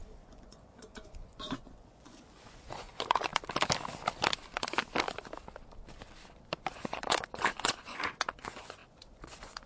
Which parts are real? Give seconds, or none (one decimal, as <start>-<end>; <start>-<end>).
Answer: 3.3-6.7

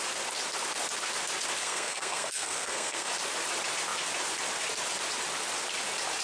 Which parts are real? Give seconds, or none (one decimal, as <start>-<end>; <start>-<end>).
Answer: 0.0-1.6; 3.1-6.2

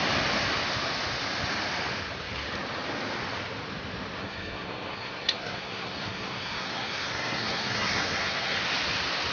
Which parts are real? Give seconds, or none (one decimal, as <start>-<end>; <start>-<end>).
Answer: 0.0-4.2; 8.6-9.3

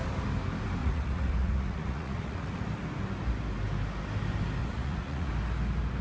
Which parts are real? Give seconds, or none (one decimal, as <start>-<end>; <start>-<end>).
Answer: 0.0-0.8; 2.6-4.6; 5.3-6.0